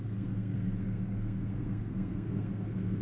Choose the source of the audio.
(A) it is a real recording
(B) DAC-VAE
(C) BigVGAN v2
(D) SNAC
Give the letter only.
D